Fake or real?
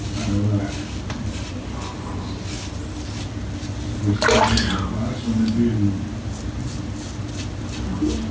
real